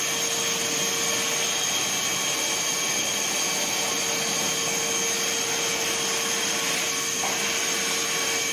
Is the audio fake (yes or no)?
no